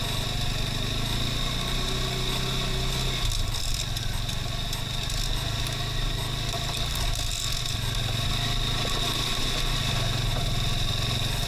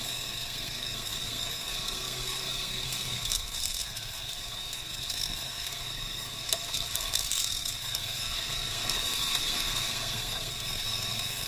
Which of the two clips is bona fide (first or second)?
first